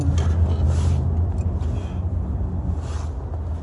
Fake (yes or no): no